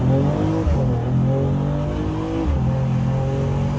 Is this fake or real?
real